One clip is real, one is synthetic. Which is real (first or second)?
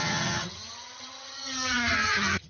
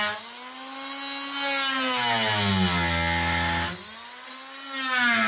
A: second